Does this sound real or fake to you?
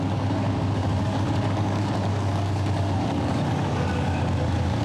fake